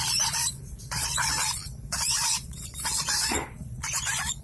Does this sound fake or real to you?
fake